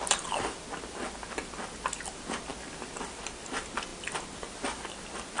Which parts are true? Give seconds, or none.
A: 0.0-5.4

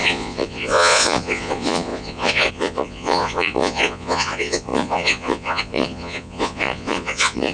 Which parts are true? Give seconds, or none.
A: none

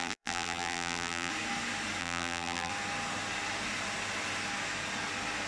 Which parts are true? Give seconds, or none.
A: 1.3-2.0; 2.7-5.5